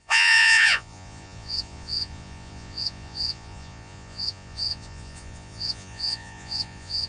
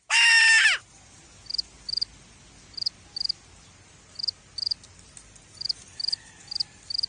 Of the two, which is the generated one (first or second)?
first